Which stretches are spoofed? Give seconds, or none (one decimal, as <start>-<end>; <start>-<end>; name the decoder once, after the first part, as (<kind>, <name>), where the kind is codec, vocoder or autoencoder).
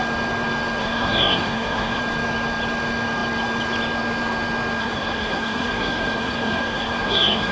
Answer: 0.8-2.0 (codec, SNAC); 4.8-7.5